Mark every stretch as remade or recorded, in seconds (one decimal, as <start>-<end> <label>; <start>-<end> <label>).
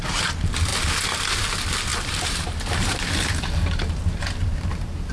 0.0-1.9 recorded; 1.9-3.0 remade; 3.0-5.1 recorded